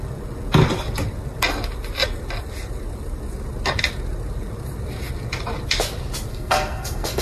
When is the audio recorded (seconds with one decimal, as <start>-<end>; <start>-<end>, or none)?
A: 0.0-6.3